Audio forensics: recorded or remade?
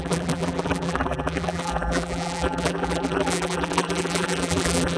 remade